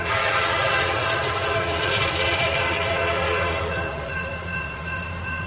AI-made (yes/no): yes